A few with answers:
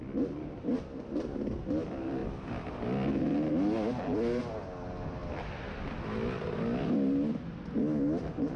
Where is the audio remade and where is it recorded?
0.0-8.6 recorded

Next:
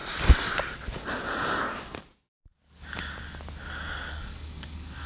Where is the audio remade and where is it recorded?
0.0-4.1 recorded; 4.1-5.1 remade

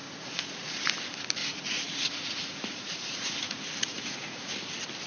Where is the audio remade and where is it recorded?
0.0-0.8 remade; 0.8-1.4 recorded; 1.4-4.5 remade; 4.5-5.1 recorded

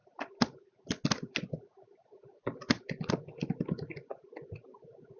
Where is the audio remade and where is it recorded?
0.0-5.2 recorded

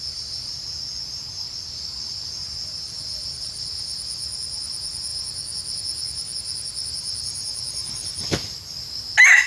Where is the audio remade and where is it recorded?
0.0-9.5 recorded